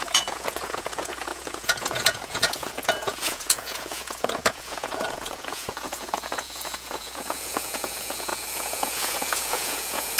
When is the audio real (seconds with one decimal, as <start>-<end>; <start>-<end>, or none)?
none